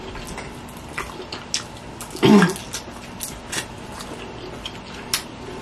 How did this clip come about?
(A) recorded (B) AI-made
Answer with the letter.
A